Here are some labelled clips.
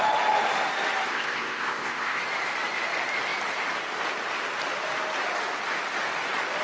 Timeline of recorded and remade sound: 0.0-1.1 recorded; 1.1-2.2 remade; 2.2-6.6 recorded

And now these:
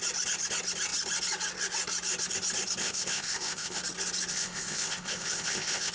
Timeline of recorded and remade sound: 0.0-2.8 recorded; 2.8-3.8 remade; 3.8-4.3 recorded; 4.3-5.9 remade

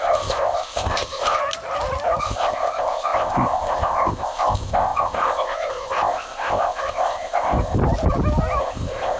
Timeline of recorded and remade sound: 0.0-1.4 remade; 1.4-2.2 recorded; 2.2-7.8 remade; 7.8-8.6 recorded; 8.6-9.2 remade